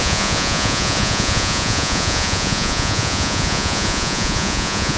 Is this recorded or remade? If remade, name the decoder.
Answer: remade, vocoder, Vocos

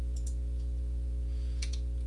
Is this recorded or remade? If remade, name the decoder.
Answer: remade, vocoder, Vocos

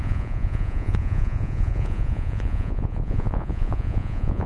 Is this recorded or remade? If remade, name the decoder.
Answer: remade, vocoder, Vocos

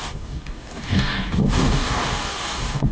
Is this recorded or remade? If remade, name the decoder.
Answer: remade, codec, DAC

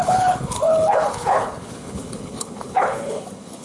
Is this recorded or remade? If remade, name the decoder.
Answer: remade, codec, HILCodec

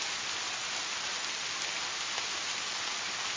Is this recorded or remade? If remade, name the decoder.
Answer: recorded